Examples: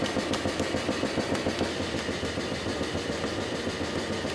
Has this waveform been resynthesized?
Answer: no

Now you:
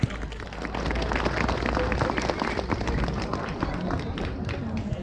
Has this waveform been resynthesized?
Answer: no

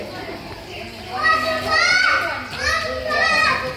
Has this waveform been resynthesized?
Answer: no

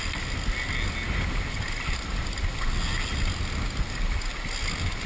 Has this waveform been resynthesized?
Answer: no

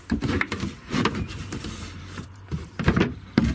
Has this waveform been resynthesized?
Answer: yes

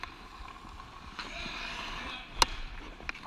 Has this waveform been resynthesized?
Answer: no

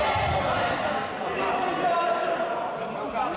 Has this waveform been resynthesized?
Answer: no